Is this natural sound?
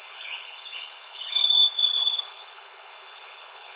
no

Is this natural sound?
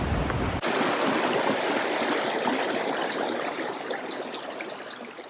yes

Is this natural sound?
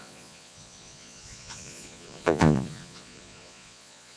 no